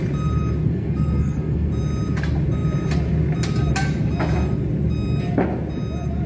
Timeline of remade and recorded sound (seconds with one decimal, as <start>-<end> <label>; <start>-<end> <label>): 0.0-0.6 recorded; 0.6-1.7 remade; 1.7-6.3 recorded